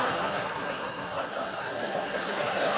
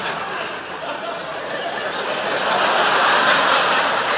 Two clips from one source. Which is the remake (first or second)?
first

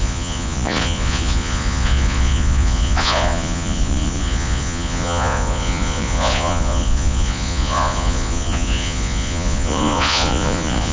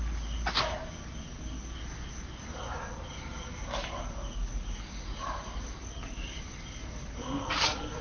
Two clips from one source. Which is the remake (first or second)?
first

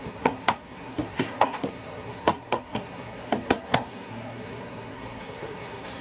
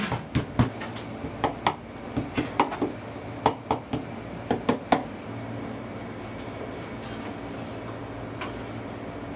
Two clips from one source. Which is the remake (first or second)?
first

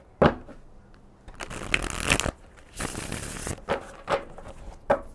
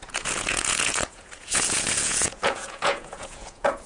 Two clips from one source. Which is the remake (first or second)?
second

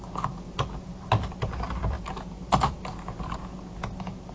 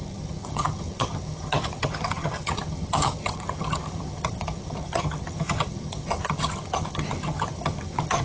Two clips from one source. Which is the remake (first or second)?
second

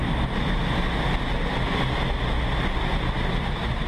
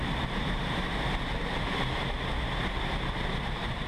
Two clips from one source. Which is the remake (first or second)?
second